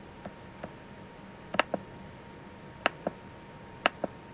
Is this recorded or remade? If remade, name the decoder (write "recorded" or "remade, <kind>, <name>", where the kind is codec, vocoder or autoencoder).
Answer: recorded